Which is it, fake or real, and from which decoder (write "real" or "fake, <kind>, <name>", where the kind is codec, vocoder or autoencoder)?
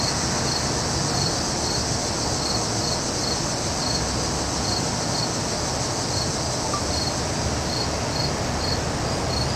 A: real